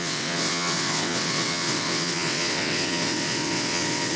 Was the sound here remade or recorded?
remade